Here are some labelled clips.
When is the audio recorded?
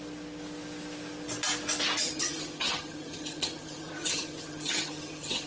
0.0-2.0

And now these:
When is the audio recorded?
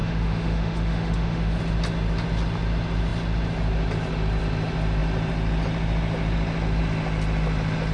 1.6-7.9